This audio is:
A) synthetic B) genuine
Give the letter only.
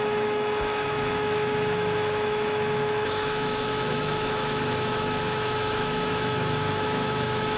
A